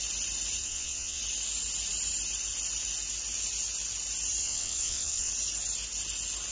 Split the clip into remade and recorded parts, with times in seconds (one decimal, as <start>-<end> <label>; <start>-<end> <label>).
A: 0.0-0.6 recorded; 0.6-1.2 remade; 1.2-4.4 recorded; 4.4-5.3 remade; 5.3-6.5 recorded